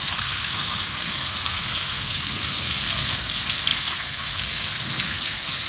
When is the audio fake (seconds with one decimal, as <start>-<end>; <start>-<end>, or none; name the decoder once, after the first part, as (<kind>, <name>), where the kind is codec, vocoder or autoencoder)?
0.0-5.7 (codec, SNAC)